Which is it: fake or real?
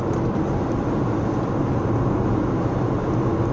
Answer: real